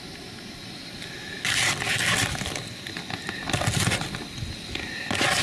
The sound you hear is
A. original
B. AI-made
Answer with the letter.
A